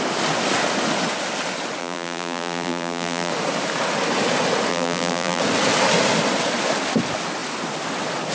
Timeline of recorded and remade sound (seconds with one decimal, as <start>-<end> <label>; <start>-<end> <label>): 0.0-1.8 recorded; 1.8-3.3 remade; 3.3-4.7 recorded; 4.7-5.4 remade; 5.4-8.3 recorded